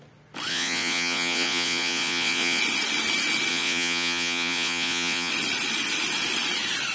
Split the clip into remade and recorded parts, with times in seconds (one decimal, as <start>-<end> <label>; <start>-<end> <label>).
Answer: 0.0-0.5 recorded; 0.5-2.6 remade; 2.6-3.5 recorded; 3.5-5.3 remade; 5.3-6.9 recorded